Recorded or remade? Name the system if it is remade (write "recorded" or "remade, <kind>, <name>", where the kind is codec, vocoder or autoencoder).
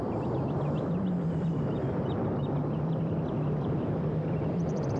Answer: remade, vocoder, BigVGAN v2